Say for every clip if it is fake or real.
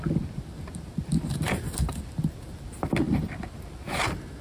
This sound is real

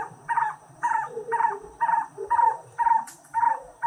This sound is fake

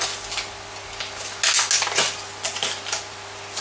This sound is real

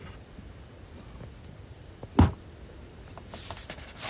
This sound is real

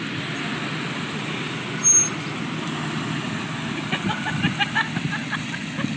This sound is real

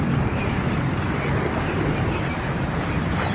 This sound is fake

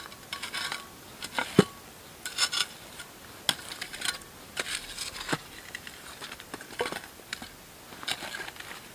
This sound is real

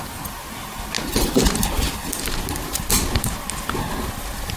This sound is real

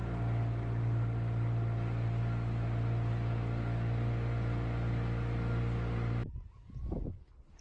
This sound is real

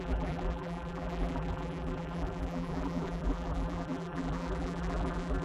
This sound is fake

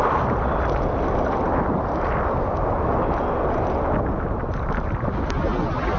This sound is real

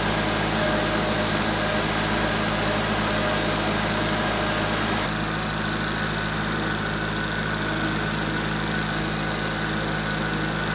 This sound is real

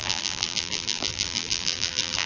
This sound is fake